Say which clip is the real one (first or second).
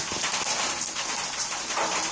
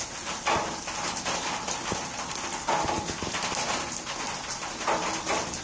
second